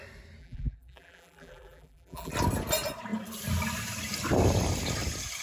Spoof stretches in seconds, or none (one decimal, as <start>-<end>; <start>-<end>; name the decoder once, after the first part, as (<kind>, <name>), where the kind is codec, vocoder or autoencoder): 0.4-2.3 (vocoder, BigVGAN v2)